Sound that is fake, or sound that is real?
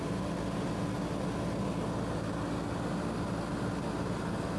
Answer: real